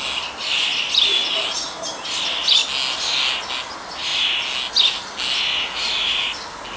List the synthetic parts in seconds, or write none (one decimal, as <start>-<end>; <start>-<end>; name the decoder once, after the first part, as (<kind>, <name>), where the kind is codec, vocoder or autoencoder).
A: none